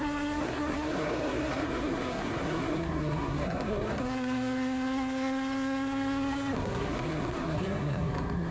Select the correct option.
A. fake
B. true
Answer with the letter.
A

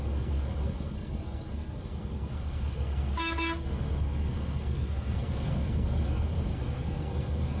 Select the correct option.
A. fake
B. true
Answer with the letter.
A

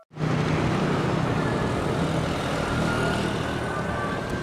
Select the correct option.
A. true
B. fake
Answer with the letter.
A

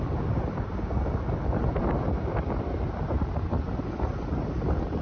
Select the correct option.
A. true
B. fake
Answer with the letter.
A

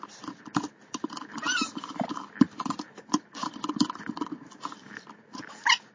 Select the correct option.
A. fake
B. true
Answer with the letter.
A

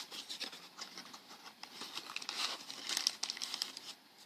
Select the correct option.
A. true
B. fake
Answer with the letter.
A